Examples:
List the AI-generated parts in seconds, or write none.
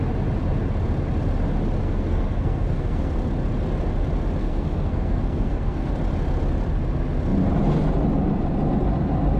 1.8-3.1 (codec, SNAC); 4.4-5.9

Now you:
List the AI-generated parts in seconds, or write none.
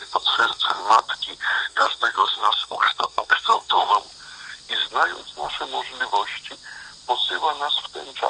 0.0-0.8 (codec, SNAC); 1.6-3.9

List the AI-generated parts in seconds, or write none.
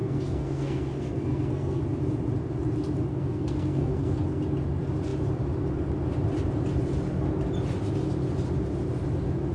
0.0-1.8 (codec, SNAC); 3.1-4.4